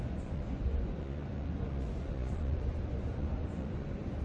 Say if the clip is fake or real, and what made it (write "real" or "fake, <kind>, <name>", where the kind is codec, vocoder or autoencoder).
fake, vocoder, Vocos